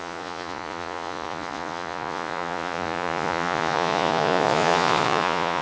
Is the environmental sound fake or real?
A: fake